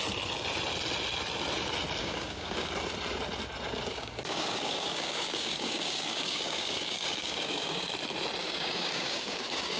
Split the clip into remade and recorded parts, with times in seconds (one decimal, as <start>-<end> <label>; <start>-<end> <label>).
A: 0.0-2.0 recorded; 2.0-2.7 remade; 2.7-3.9 recorded; 3.9-7.9 remade; 7.9-8.4 recorded; 8.4-9.8 remade